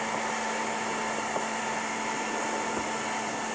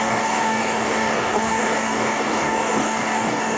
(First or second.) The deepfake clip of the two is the second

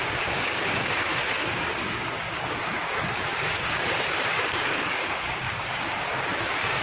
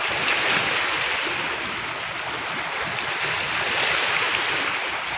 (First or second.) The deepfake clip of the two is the first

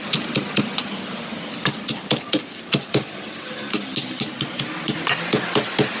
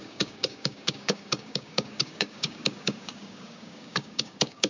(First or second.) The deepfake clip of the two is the second